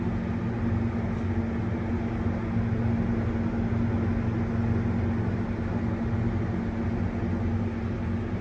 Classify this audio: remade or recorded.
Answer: recorded